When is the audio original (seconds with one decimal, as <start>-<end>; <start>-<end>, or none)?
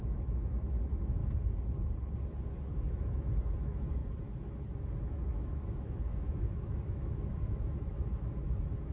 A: 1.2-2.5